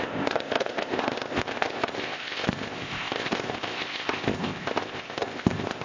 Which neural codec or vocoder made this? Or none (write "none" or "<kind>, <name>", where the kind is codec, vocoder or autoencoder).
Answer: codec, ZipCodec